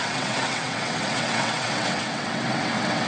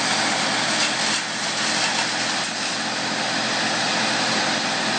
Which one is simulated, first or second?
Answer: first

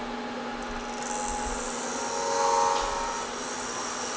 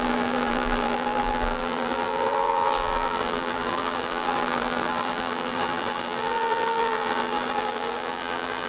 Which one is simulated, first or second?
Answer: second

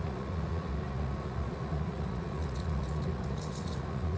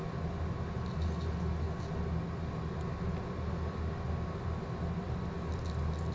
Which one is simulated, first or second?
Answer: first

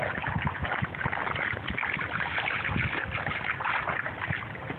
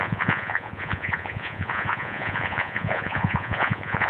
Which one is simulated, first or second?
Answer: second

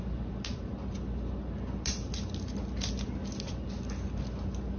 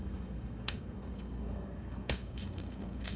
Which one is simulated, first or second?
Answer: second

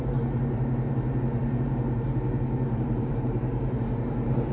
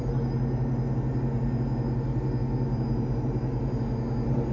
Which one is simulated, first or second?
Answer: first